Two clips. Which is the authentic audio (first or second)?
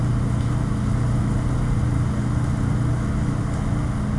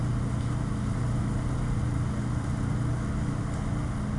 first